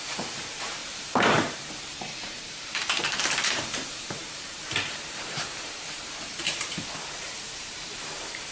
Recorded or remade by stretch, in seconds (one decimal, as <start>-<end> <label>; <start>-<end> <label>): 0.0-8.5 remade